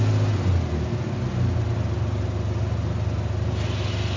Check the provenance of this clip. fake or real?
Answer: real